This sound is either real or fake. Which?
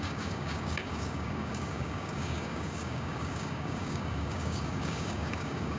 fake